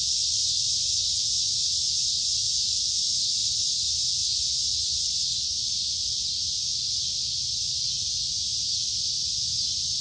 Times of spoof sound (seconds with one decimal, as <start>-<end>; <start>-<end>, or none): 0.4-1.1